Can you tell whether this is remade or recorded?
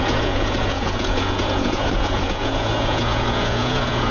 remade